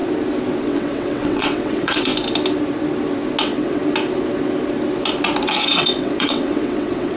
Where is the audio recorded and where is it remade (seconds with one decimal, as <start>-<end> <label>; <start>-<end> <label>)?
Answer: 0.0-0.6 recorded; 0.6-2.1 remade; 2.1-3.4 recorded; 3.4-3.8 remade; 3.8-5.6 recorded; 5.6-7.2 remade